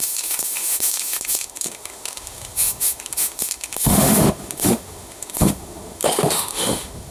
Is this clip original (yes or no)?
no